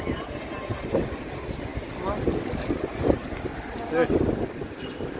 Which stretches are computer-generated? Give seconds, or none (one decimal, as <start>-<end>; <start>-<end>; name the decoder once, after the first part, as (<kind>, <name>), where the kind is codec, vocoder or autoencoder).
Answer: none